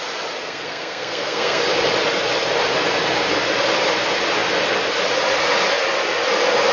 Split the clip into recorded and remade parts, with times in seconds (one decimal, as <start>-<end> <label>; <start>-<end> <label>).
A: 0.0-0.4 recorded; 0.4-1.6 remade; 1.6-6.7 recorded